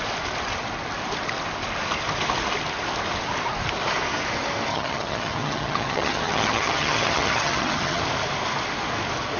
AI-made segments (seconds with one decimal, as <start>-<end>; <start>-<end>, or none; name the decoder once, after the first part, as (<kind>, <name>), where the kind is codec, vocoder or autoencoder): 4.7-8.0 (vocoder, HiFi-GAN)